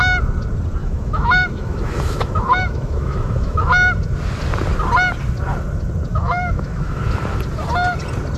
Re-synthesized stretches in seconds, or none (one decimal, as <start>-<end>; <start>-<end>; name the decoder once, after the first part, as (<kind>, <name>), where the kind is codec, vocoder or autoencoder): 0.8-3.7 (autoencoder, DAC-VAE); 6.1-7.0